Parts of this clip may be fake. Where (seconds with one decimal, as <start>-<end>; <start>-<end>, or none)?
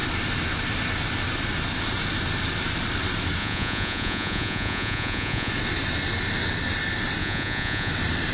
3.4-5.5; 7.2-7.9